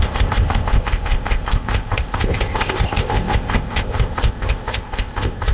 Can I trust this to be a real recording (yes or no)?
no